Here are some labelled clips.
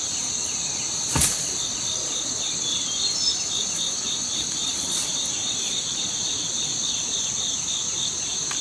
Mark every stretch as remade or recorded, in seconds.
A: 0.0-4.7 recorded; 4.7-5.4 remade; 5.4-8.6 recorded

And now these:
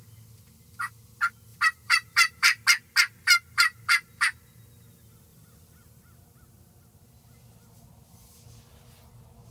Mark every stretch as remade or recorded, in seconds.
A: 0.0-1.5 recorded; 1.5-2.6 remade; 2.6-5.3 recorded; 5.3-5.9 remade; 5.9-9.5 recorded

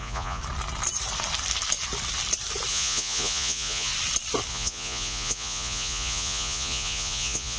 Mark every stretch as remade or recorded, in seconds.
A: 0.0-0.4 remade; 0.4-2.7 recorded; 2.7-3.9 remade; 3.9-4.5 recorded; 4.5-7.6 remade

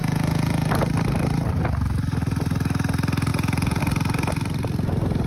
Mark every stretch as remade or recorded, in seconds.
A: 0.0-0.7 remade; 0.7-3.3 recorded; 3.3-3.8 remade; 3.8-5.3 recorded

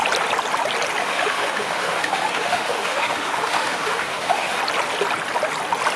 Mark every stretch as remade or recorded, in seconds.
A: 0.0-1.0 recorded; 1.0-4.6 remade; 4.6-6.0 recorded

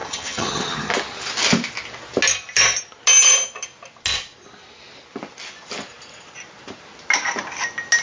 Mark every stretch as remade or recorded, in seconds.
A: 0.0-0.9 remade; 0.9-8.0 recorded

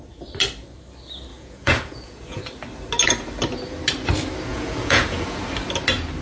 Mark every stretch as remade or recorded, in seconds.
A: 0.0-1.3 recorded; 1.3-2.4 remade; 2.4-4.5 recorded; 4.5-5.4 remade; 5.4-6.2 recorded

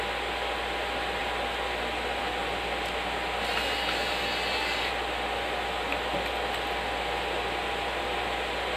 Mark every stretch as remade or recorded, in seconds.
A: 0.0-8.8 recorded